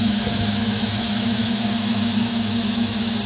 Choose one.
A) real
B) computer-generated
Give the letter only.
B